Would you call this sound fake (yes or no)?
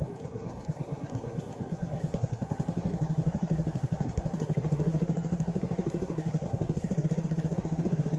yes